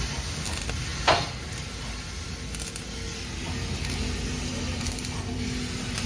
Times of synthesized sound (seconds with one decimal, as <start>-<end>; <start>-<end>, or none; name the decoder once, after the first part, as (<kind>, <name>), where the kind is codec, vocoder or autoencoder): none